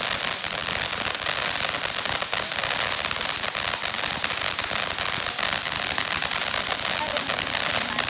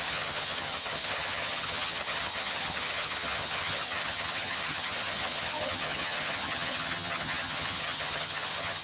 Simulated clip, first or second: second